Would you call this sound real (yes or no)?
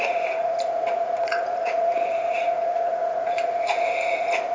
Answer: no